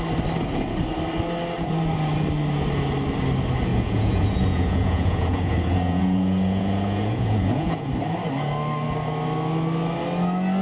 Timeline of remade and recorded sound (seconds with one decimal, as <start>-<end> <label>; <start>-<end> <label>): 0.0-3.7 recorded; 3.7-7.9 remade; 7.9-10.6 recorded